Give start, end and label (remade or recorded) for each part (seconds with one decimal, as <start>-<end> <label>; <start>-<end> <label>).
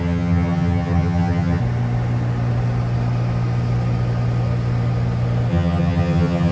0.0-1.6 remade; 1.6-5.5 recorded; 5.5-6.5 remade